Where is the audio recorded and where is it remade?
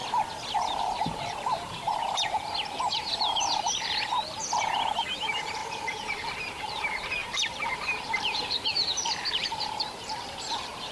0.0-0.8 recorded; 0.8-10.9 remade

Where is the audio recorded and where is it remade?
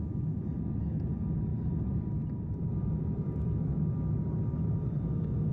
0.0-1.5 recorded; 1.5-2.7 remade; 2.7-5.5 recorded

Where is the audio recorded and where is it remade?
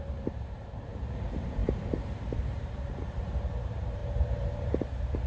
0.0-5.3 remade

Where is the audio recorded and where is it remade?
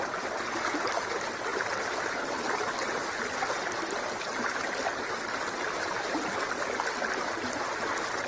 0.0-1.5 recorded; 1.5-2.7 remade; 2.7-8.3 recorded